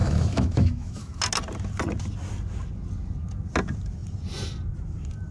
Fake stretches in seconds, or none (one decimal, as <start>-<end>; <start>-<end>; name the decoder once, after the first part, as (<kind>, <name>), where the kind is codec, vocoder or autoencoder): 0.0-1.2 (autoencoder, DAC-VAE)